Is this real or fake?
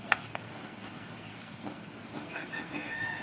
fake